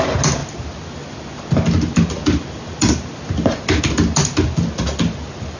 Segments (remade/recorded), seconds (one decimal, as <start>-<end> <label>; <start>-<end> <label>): 0.0-5.6 recorded